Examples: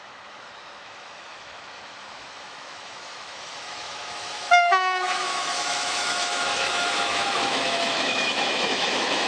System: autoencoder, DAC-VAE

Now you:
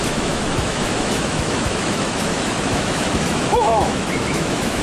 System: autoencoder, DAC-VAE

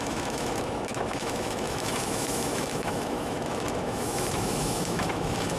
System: autoencoder, DAC-VAE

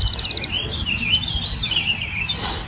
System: none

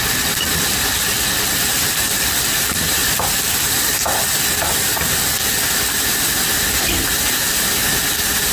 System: none